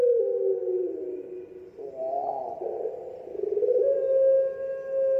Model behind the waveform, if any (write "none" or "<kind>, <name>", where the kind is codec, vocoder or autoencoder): none